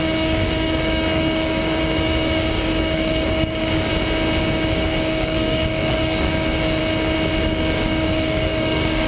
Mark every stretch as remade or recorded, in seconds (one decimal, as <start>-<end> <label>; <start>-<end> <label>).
0.0-3.9 remade; 3.9-4.4 recorded; 4.4-6.8 remade; 6.8-7.4 recorded; 7.4-9.1 remade